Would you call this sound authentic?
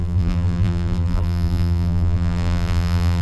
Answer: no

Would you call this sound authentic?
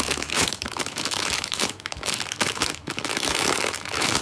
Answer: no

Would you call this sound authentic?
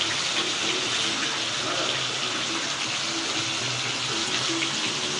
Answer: yes